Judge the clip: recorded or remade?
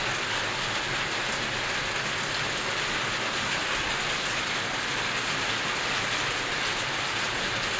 recorded